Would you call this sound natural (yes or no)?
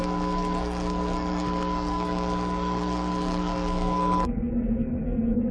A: no